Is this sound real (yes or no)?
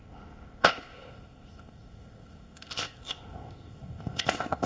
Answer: no